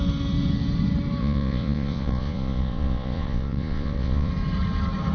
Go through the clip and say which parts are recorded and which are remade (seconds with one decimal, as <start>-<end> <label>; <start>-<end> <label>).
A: 0.0-1.2 recorded; 1.2-4.3 remade; 4.3-5.1 recorded